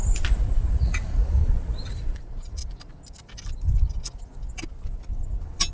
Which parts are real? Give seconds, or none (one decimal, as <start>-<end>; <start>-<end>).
0.0-0.7; 1.4-1.9; 2.6-5.7